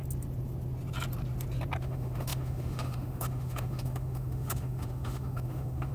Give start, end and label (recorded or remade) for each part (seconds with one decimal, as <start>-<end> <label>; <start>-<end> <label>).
0.0-1.8 recorded; 1.8-5.9 remade